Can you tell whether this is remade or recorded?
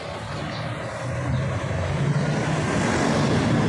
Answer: recorded